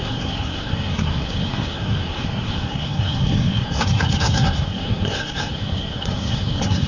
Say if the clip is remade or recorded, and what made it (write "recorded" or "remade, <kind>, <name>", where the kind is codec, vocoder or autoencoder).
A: remade, codec, SNAC